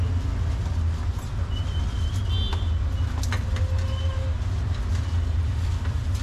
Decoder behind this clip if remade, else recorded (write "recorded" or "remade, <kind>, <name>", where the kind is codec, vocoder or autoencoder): recorded